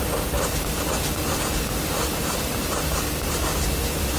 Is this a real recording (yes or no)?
yes